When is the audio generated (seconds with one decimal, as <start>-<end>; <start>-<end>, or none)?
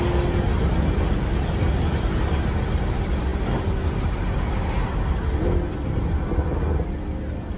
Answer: none